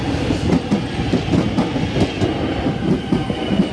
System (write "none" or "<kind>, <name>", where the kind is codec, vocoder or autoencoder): none